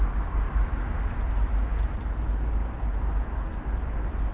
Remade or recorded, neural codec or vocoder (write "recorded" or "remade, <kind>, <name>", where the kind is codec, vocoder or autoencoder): recorded